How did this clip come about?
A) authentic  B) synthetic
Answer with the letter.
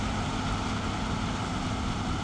A